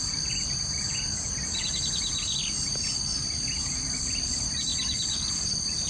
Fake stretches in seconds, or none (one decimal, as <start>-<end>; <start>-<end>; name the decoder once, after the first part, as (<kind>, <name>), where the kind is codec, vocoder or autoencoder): none